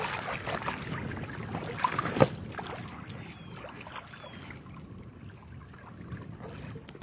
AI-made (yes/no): no